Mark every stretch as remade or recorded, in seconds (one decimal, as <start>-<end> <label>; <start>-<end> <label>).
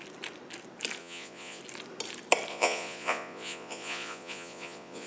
0.0-1.0 recorded; 1.0-1.6 remade; 1.6-2.5 recorded; 2.5-5.1 remade